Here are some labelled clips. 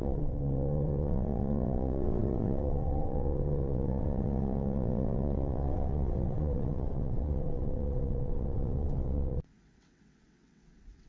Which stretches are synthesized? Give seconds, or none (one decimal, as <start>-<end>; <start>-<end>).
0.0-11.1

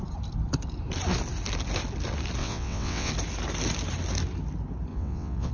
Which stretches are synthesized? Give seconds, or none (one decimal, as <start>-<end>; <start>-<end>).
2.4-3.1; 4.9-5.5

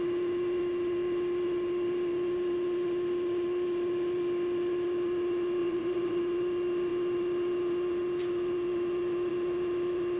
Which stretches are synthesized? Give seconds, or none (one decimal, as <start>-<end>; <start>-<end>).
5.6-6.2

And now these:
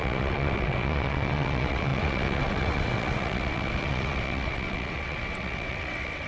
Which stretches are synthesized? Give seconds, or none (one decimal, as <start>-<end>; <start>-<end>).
0.0-6.3